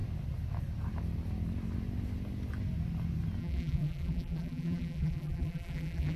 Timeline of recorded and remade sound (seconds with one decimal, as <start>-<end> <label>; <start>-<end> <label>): 0.0-3.4 recorded; 3.4-6.2 remade